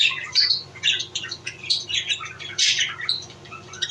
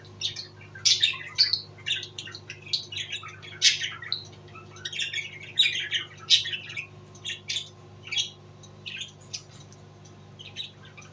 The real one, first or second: second